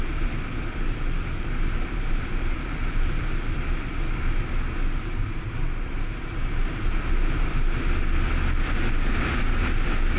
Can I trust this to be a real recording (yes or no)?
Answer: yes